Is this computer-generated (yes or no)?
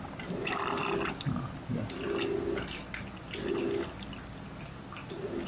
no